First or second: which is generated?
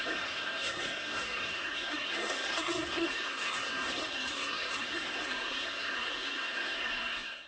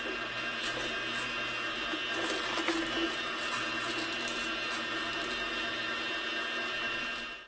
first